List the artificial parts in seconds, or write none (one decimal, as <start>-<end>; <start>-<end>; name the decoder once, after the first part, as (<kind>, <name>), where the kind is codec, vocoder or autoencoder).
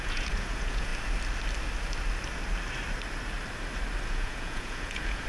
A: 0.0-0.9 (vocoder, Vocos); 4.1-5.3